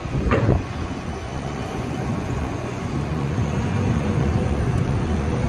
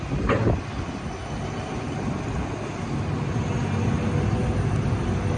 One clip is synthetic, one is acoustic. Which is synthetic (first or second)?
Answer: first